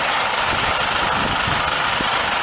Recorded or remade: recorded